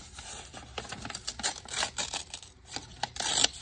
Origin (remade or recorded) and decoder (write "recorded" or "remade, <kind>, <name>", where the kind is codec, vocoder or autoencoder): recorded